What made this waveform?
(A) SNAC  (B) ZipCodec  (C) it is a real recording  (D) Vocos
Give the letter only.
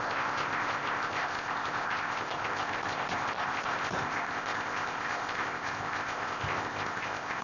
B